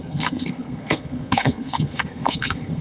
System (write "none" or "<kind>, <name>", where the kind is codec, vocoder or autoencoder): codec, SNAC